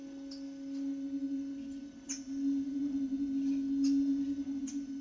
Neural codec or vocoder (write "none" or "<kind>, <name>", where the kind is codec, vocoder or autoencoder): none